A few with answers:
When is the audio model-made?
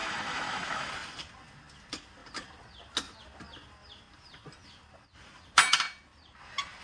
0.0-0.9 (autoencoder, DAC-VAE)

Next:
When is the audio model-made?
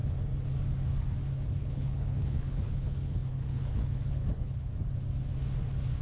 1.6-4.7 (codec, HILCodec)